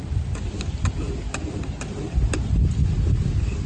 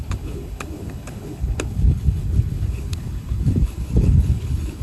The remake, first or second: second